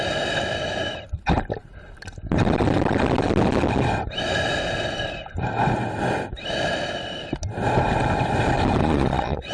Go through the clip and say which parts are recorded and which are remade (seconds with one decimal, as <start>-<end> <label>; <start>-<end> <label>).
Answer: 0.0-8.8 recorded; 8.8-9.5 remade